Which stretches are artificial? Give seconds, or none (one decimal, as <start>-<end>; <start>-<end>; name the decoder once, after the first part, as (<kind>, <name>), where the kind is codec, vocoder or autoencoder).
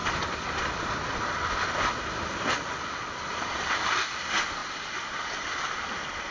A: none